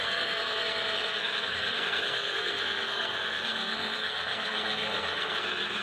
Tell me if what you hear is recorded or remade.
remade